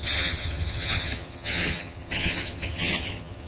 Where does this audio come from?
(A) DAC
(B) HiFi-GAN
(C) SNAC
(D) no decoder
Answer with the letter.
B